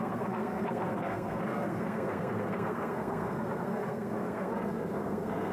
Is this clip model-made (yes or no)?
yes